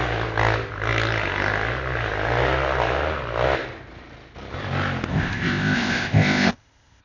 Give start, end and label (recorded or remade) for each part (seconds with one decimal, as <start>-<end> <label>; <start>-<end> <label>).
0.0-5.1 recorded; 5.1-7.0 remade